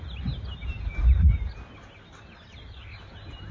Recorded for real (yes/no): yes